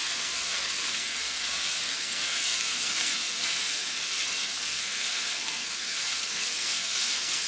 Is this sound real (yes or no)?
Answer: no